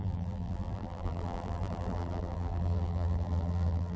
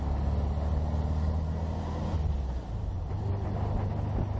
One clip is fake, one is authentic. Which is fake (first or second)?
first